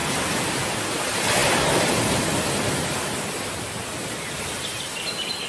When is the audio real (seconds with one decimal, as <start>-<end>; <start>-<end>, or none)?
0.0-5.5